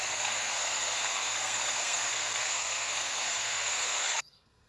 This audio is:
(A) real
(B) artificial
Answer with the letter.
B